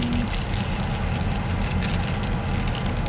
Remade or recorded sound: recorded